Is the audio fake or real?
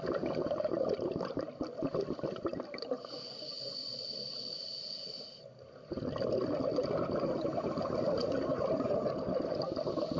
real